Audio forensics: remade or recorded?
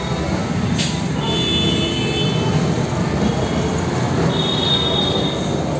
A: recorded